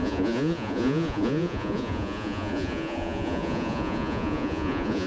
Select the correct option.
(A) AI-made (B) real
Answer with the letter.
A